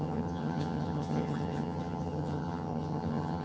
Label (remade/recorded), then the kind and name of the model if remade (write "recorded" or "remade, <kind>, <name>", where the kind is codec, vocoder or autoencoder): remade, vocoder, HiFi-GAN